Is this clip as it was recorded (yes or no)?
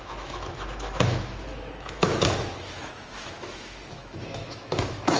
no